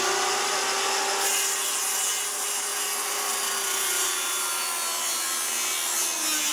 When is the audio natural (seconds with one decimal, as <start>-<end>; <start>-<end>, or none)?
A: 0.0-6.5